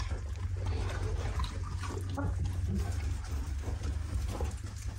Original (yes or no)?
yes